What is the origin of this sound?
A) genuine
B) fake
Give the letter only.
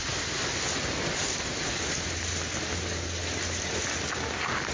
A